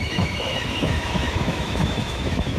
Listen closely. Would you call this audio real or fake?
fake